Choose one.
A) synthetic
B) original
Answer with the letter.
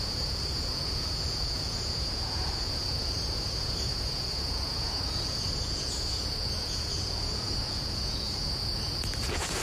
A